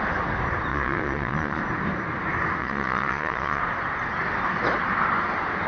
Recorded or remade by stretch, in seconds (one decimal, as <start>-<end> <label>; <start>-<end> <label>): 0.0-0.7 recorded; 0.7-1.6 remade; 1.6-2.6 recorded; 2.6-3.6 remade; 3.6-5.7 recorded